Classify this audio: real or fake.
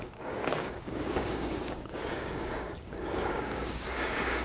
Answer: fake